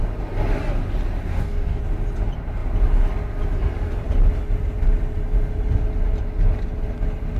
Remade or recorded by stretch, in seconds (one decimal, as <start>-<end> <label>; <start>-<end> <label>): 0.0-1.3 recorded; 1.3-1.8 remade; 1.8-7.4 recorded